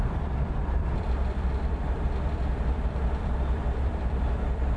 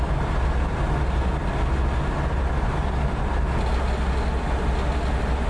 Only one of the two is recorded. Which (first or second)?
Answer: second